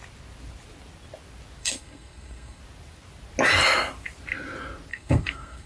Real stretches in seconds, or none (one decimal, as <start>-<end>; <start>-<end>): 0.0-1.6; 2.6-4.9

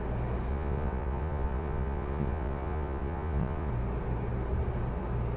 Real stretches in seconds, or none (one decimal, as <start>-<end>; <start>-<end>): 0.0-0.5; 3.7-5.4

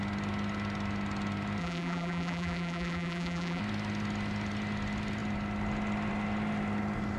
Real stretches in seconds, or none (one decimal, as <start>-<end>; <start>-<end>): 0.0-1.6; 3.6-7.2

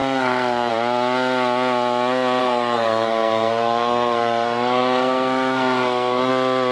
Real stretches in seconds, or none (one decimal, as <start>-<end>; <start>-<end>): 0.7-2.4; 6.3-6.7

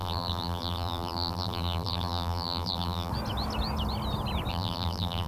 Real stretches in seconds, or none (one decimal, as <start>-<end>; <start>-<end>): 3.1-4.5

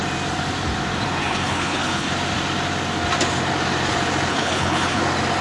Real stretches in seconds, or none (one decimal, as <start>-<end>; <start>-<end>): 0.0-1.2; 2.1-4.3; 5.0-5.4